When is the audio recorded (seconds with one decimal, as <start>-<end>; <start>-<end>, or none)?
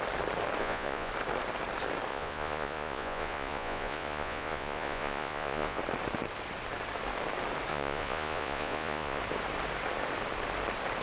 0.0-0.6; 1.1-2.1; 5.8-7.7; 9.2-11.0